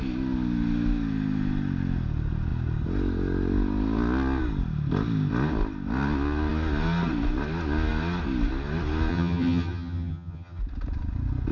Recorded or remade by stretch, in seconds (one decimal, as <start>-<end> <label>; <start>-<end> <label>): 0.0-9.1 recorded; 9.1-10.6 remade; 10.6-11.5 recorded